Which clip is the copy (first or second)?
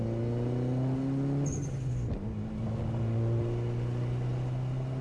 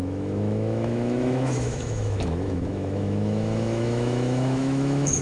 second